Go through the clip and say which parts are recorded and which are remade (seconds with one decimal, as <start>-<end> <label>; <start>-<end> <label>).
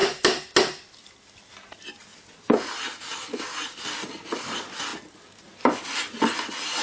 0.0-1.4 recorded; 1.4-2.1 remade; 2.1-2.7 recorded; 2.7-3.1 remade; 3.1-3.8 recorded; 3.8-4.9 remade; 4.9-5.4 recorded; 5.4-6.8 remade